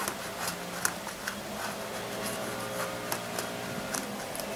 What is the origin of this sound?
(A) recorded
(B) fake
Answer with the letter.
A